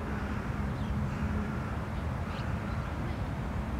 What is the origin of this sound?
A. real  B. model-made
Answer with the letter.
B